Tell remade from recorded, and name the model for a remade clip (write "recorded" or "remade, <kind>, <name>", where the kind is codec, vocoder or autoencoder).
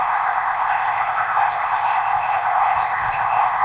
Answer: remade, codec, ZipCodec